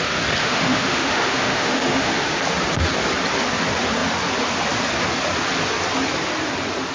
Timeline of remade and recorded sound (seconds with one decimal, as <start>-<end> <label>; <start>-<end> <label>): 0.0-0.4 recorded; 0.4-2.4 remade; 2.4-6.9 recorded